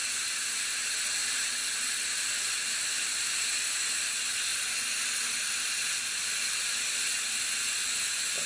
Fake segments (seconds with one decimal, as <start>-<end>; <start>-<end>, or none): none